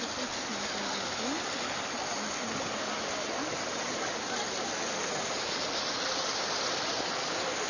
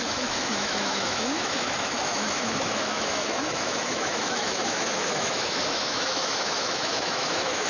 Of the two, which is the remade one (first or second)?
second